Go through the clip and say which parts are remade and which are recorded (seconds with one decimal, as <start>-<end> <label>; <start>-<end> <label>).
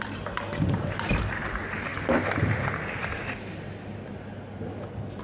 0.0-5.2 recorded